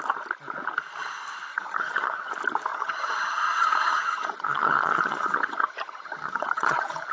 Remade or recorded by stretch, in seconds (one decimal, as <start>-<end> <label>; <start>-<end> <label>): 0.0-1.5 recorded; 1.5-2.3 remade; 2.3-2.7 recorded; 2.7-7.1 remade